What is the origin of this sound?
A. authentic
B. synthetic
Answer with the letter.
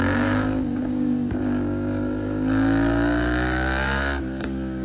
B